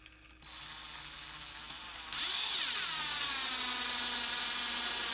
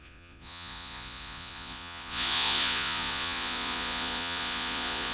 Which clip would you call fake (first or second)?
second